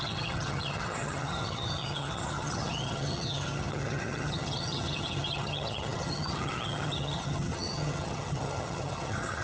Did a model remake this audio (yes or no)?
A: yes